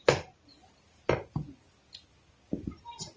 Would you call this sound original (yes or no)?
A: yes